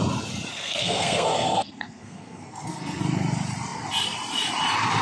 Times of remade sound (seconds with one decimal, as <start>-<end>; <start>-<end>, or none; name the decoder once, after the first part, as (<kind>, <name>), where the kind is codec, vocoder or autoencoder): 0.5-3.0 (codec, SNAC)

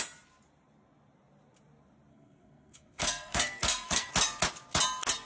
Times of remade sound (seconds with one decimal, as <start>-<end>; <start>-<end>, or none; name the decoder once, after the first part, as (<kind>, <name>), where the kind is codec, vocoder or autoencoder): 2.1-4.1 (codec, SNAC)

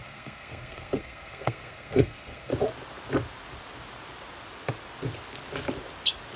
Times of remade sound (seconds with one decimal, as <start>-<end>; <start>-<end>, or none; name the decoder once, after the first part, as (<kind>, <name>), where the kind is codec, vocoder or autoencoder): 0.0-2.5 (codec, SNAC)

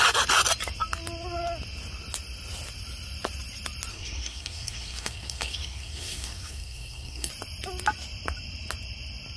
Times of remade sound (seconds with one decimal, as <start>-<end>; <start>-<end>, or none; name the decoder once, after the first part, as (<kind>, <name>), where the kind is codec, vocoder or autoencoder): 3.9-7.3 (codec, SNAC)